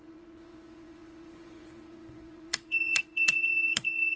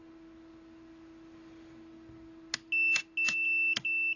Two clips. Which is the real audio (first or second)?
second